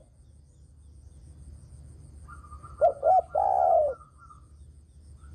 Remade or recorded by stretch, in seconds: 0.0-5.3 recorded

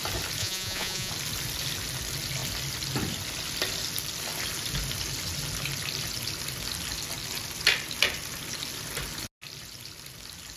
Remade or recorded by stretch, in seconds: 0.0-0.4 recorded; 0.4-1.1 remade; 1.1-10.6 recorded

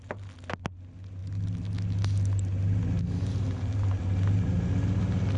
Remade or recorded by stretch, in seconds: 0.0-5.4 recorded

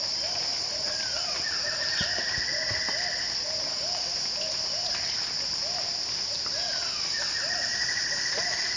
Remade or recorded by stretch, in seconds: 0.0-7.7 recorded; 7.7-8.8 remade

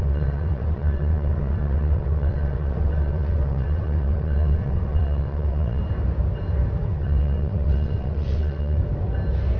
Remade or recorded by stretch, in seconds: 0.0-5.8 remade; 5.8-6.9 recorded; 6.9-8.8 remade; 8.8-9.6 recorded

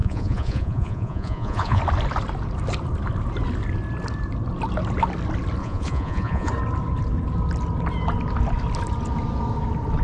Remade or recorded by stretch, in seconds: 0.0-1.8 remade; 1.8-5.6 recorded; 5.6-6.5 remade; 6.5-10.0 recorded

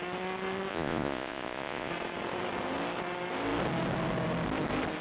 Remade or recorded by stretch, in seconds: 0.0-0.7 recorded; 0.7-1.9 remade; 1.9-5.0 recorded